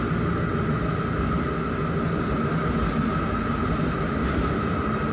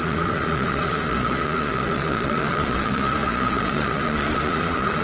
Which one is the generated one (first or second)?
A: second